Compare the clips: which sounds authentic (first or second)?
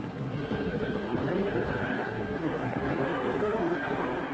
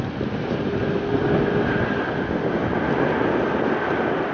second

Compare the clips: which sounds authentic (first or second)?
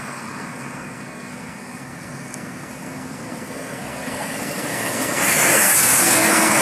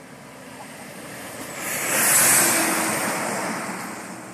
second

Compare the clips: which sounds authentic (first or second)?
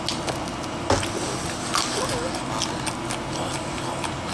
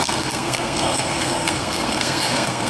first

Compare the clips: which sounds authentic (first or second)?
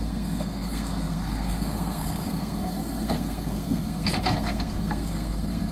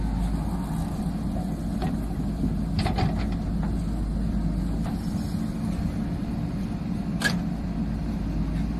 second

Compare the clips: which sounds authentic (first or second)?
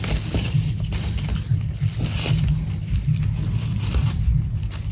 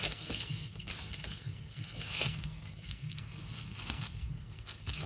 first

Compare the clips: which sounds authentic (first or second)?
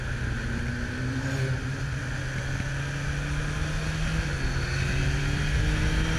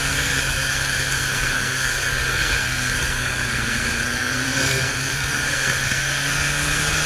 first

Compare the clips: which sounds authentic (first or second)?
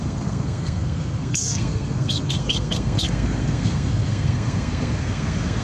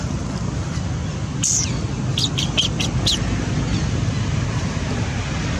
second